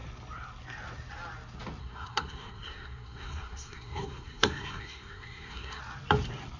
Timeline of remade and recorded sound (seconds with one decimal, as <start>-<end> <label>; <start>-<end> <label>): 0.0-1.8 recorded; 1.8-5.8 remade; 5.8-6.6 recorded